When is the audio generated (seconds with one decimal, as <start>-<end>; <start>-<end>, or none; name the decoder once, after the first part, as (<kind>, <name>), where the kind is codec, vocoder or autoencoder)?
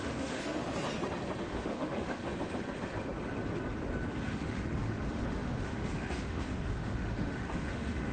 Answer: 0.0-0.6 (autoencoder, DAC-VAE); 1.4-2.2; 4.1-8.1